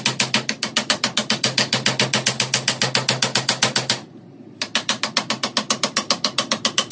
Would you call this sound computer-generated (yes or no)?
no